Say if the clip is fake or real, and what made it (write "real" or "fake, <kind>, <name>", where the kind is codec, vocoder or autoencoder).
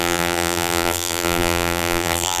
fake, vocoder, BigVGAN v2